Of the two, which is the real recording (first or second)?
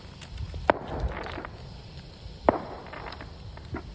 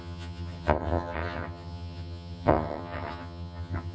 first